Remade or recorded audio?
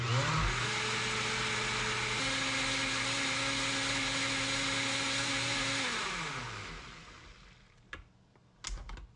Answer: recorded